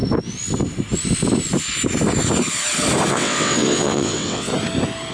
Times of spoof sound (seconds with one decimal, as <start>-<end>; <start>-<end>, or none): 3.1-4.5